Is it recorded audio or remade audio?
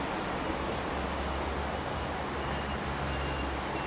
recorded